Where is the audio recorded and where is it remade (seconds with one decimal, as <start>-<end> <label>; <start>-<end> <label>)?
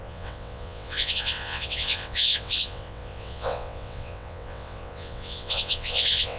0.0-6.4 remade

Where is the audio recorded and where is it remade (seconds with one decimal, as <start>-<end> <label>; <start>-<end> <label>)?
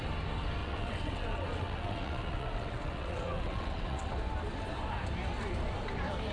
0.0-0.6 recorded; 0.6-4.1 remade; 4.1-6.3 recorded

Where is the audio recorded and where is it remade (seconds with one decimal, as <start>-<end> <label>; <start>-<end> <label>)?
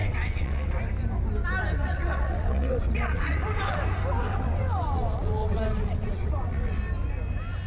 0.0-0.8 remade; 0.8-1.8 recorded; 1.8-3.8 remade; 3.8-4.2 recorded; 4.2-6.8 remade; 6.8-7.7 recorded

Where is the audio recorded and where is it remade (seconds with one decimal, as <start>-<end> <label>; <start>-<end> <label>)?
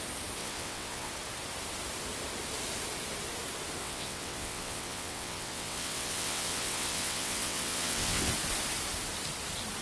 0.0-0.4 recorded; 0.4-1.1 remade; 1.1-3.8 recorded; 3.8-8.3 remade; 8.3-9.8 recorded